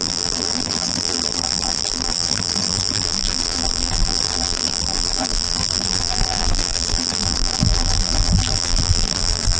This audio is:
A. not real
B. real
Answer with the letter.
A